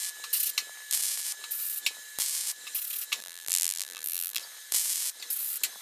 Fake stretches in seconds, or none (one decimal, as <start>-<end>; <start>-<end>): 3.2-4.4